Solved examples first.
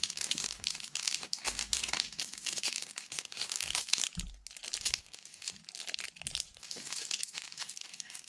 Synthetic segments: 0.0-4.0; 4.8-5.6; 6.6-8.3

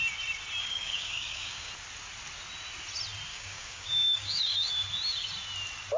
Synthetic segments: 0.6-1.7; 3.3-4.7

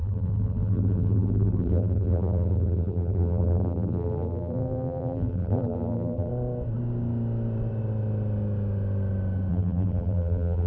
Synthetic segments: 0.0-6.3; 9.5-10.7

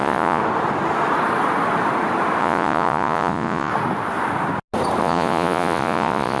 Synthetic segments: 0.0-0.4; 2.4-3.7; 5.0-6.4

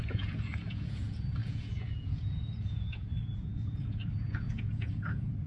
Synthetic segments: 0.0-5.5

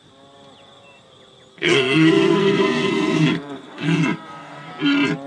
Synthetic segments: 1.5-4.7

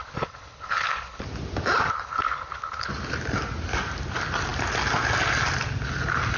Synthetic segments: 0.0-1.2; 1.9-2.9